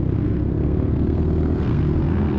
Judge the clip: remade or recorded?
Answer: remade